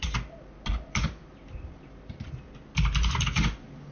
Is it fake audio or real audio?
real